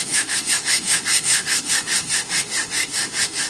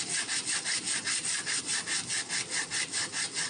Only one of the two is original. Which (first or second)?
second